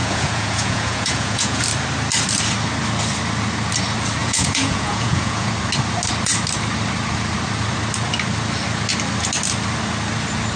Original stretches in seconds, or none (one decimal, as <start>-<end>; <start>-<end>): 1.6-4.2; 5.5-10.6